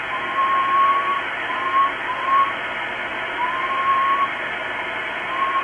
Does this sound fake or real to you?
fake